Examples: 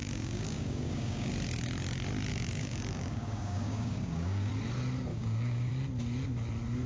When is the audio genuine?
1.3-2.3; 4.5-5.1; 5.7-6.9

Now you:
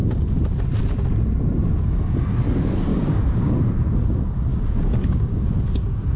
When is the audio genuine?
0.0-2.9; 3.5-4.5; 5.6-6.2

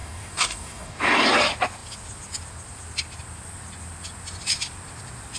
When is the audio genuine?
1.0-5.4

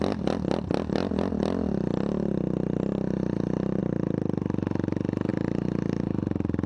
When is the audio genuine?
0.0-6.7

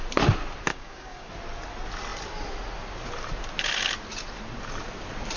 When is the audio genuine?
0.0-0.7; 1.3-5.4

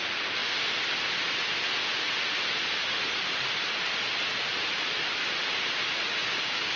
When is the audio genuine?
0.0-6.2